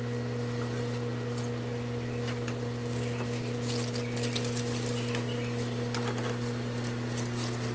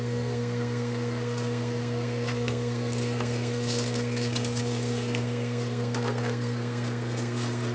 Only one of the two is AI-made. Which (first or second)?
second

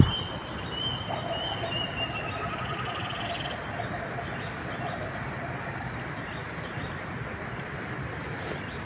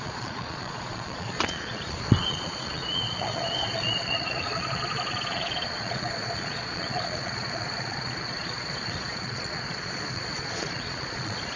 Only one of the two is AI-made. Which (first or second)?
second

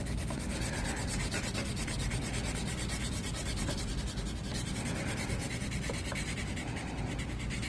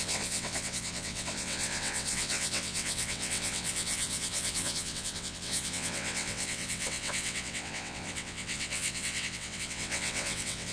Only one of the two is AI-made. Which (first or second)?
second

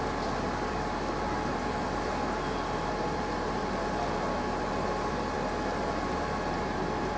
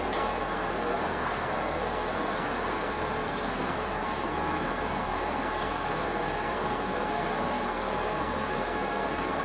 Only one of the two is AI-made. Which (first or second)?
second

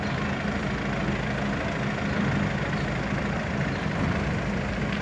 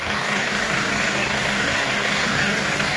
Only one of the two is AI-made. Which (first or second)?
second